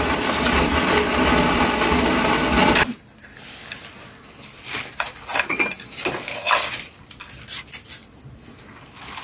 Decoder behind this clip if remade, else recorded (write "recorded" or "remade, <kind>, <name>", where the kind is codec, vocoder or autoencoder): recorded